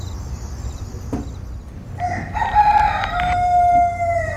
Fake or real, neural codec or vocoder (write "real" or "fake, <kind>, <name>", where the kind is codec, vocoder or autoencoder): real